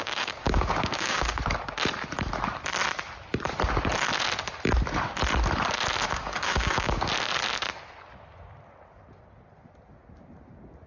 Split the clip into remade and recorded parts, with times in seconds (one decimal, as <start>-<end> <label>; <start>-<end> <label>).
0.0-1.4 remade; 1.4-6.1 recorded; 6.1-7.1 remade; 7.1-10.9 recorded